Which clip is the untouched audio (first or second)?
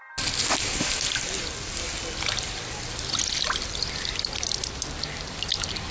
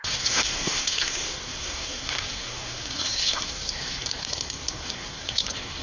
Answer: first